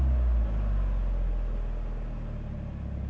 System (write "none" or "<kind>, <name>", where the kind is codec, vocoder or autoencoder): none